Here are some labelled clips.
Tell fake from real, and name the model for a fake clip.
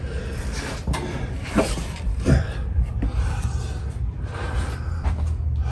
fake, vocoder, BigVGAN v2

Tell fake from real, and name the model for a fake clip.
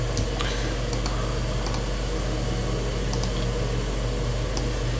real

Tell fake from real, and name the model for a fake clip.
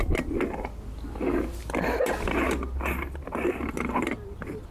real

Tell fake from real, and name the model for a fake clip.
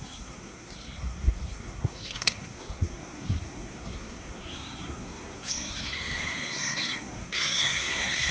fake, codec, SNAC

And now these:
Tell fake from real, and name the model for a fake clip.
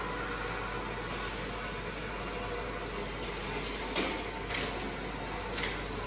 real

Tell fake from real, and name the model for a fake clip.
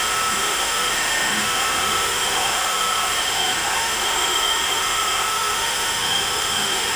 fake, autoencoder, DAC-VAE